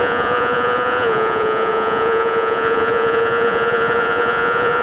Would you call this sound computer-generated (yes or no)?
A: yes